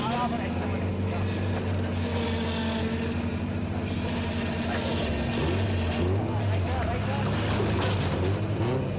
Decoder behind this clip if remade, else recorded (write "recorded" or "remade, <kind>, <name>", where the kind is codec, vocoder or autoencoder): recorded